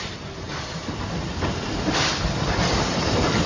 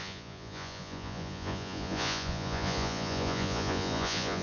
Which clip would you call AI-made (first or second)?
second